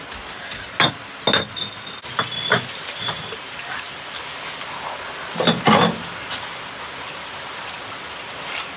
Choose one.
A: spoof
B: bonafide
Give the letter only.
B